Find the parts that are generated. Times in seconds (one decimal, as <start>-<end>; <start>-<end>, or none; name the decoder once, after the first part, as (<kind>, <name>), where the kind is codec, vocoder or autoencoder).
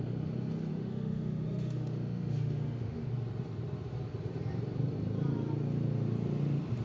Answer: 0.7-3.1 (autoencoder, DAC-VAE)